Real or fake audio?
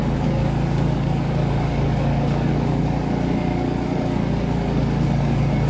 fake